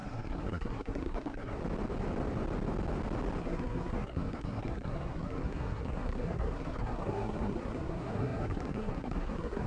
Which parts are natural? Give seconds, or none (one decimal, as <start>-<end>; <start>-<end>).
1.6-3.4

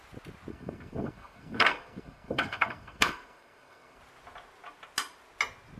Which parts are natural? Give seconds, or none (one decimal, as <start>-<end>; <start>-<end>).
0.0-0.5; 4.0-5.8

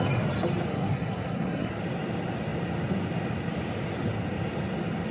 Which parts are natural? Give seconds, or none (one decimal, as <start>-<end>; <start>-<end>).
0.0-0.7; 1.7-5.1